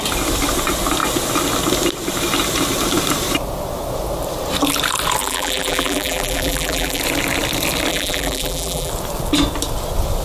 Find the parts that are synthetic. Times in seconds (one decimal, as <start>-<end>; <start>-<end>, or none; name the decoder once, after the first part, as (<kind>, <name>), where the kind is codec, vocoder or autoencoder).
5.2-7.0 (vocoder, BigVGAN v2); 7.9-8.9